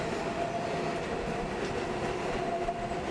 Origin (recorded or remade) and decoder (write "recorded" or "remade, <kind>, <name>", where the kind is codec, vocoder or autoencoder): recorded